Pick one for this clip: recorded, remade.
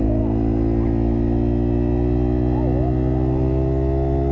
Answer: recorded